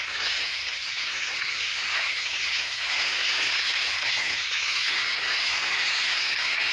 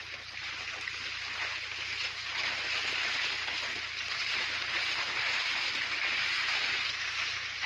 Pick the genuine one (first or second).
second